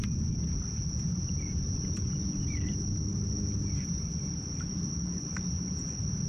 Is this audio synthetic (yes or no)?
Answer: no